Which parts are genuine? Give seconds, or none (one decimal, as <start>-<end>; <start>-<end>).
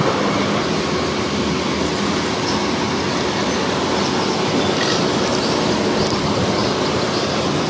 0.0-7.7